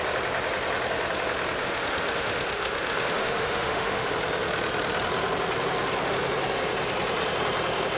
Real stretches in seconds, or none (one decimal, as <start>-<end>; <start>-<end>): 0.0-1.6; 4.1-8.0